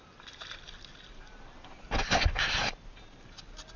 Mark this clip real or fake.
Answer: real